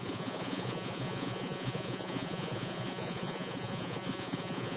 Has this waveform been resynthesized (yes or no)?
yes